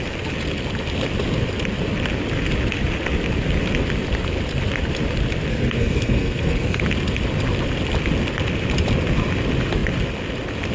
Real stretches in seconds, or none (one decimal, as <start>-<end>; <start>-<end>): 0.0-5.5; 6.8-10.7